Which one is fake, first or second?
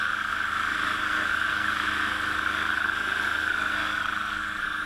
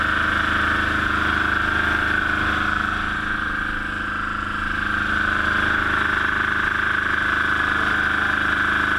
first